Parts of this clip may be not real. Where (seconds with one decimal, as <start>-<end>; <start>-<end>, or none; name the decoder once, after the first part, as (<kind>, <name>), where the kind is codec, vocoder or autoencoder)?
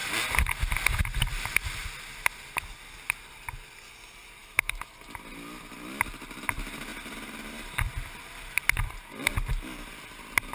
4.4-4.9 (autoencoder, DAC-VAE)